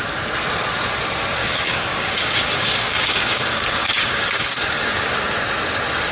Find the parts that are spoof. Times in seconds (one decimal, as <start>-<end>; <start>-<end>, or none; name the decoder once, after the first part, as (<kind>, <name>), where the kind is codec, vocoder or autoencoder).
1.4-5.1 (codec, DAC)